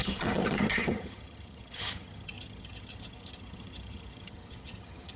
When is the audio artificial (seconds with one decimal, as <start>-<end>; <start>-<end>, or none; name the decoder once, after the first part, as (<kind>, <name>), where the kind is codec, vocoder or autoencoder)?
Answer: 0.0-5.2 (vocoder, HiFi-GAN)